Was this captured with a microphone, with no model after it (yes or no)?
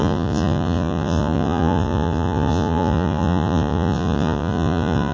no